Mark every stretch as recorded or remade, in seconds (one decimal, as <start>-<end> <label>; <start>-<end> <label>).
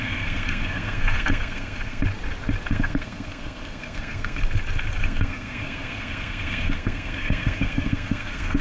0.0-2.0 remade; 2.0-2.7 recorded; 2.7-4.4 remade; 4.4-5.0 recorded; 5.0-8.6 remade